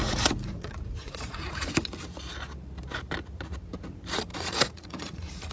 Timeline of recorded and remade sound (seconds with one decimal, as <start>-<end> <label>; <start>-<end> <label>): 0.0-1.7 remade; 1.7-4.3 recorded; 4.3-5.5 remade